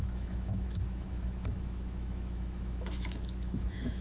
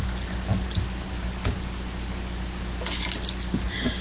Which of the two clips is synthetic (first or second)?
first